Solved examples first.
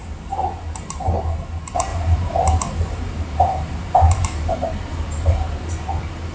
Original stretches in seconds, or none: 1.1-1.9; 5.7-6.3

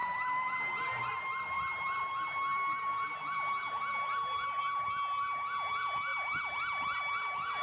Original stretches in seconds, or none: 4.6-6.1; 7.0-7.6

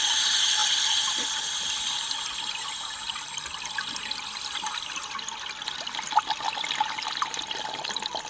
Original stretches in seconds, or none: 0.0-8.3

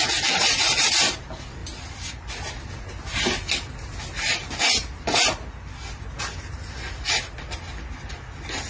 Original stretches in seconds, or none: 0.0-8.7

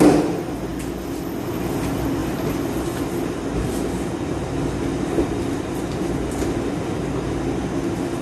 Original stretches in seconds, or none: 0.0-8.2

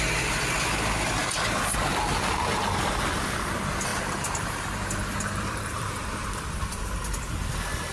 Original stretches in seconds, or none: 0.0-3.9; 7.2-7.9

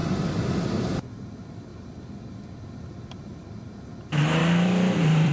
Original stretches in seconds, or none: 0.7-1.7; 3.5-4.4

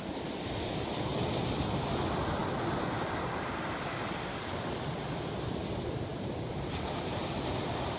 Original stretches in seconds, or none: 0.0-6.1; 7.2-8.0